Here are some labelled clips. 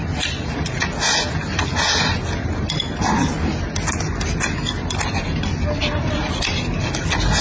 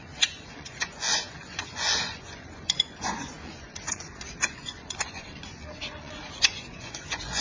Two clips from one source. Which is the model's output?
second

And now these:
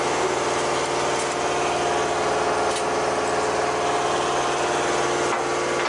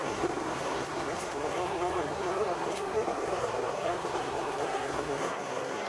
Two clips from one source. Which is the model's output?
second